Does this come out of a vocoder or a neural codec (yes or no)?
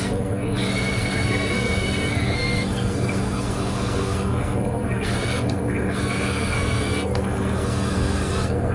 yes